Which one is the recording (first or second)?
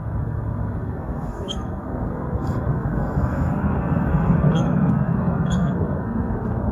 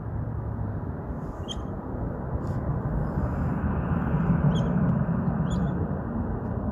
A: second